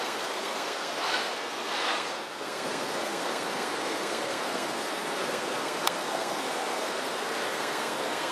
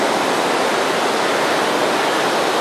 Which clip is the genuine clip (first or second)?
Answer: second